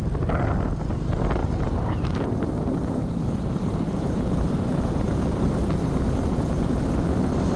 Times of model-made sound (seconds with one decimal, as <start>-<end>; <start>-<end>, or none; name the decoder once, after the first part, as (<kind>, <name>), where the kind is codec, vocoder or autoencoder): 1.4-6.0 (vocoder, BigVGAN v2)